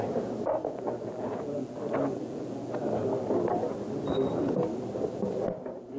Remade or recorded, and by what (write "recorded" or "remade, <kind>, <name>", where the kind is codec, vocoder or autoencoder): recorded